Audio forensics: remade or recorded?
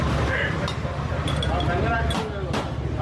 recorded